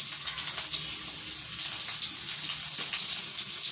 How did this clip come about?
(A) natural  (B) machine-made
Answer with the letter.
A